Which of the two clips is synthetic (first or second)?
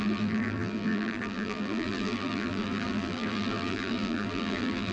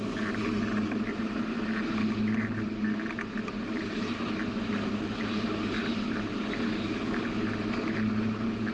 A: first